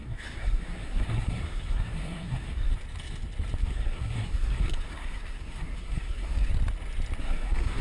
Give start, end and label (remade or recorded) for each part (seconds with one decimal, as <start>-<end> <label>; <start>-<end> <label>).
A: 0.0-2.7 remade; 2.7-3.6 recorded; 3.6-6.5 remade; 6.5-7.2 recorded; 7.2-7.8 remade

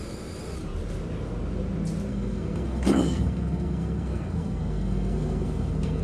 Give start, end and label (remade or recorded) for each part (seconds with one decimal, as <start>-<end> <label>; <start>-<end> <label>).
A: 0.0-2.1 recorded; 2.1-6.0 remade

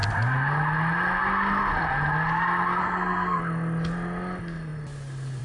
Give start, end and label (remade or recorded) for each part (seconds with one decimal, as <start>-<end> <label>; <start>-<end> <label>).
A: 0.0-2.8 recorded; 2.8-3.4 remade; 3.4-5.4 recorded

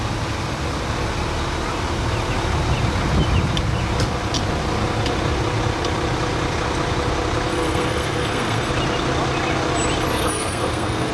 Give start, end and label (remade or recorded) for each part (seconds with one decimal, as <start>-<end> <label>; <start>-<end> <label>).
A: 0.0-7.5 recorded; 7.5-8.7 remade; 8.7-10.1 recorded; 10.1-11.1 remade